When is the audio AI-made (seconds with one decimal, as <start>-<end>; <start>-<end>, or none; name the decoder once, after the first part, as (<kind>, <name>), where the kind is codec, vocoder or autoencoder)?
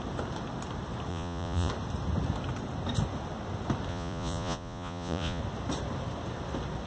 1.1-1.7 (vocoder, Vocos); 3.9-5.4